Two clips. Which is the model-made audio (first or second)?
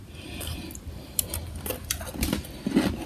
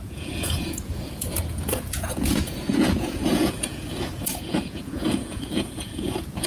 second